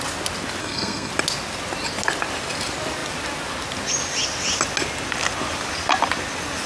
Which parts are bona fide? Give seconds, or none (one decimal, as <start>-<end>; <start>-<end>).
0.0-0.6; 1.1-6.7